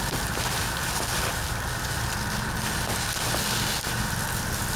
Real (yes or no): yes